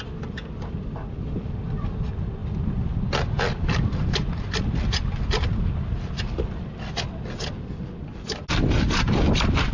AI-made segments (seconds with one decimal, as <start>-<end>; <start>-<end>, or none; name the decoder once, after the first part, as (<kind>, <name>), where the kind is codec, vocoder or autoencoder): none